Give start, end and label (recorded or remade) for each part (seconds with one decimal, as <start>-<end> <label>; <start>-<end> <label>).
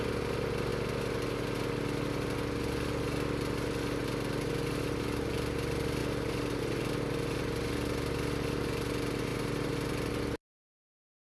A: 0.0-11.3 recorded